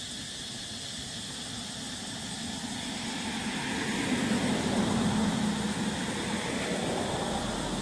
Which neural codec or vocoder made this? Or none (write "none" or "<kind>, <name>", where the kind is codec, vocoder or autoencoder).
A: none